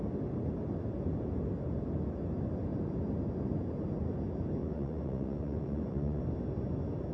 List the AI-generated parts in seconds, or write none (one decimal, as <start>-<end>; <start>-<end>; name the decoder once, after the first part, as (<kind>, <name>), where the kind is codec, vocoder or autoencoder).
4.6-6.2 (vocoder, Vocos)